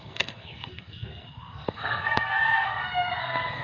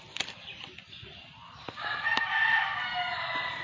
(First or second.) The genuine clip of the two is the second